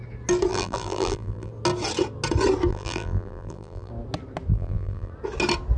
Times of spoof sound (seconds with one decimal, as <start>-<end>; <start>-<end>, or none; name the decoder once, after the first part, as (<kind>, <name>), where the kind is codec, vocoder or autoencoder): 0.5-1.5 (vocoder, BigVGAN v2); 2.7-3.9; 4.5-5.1